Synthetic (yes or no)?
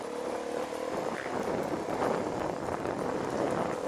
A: no